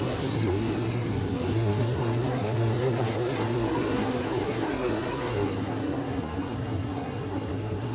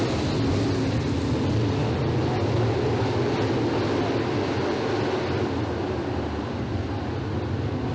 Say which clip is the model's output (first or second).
first